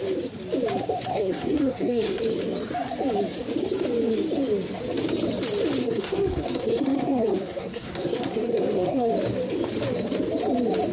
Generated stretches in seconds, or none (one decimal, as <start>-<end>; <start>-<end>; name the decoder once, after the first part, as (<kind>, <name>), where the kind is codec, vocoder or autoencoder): 1.1-2.2 (codec, SNAC); 5.8-9.1